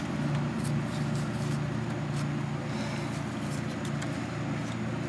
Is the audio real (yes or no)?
yes